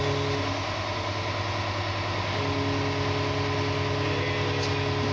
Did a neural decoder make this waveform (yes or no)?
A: no